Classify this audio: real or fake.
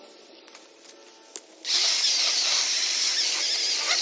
real